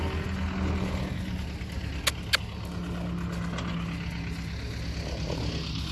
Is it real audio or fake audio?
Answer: real